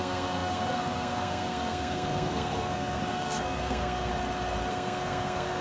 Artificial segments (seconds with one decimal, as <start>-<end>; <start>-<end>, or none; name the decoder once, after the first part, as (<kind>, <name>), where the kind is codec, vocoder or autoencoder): 0.0-4.1 (codec, SNAC); 4.7-5.6